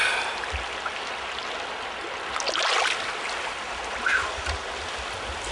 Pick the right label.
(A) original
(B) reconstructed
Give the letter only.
A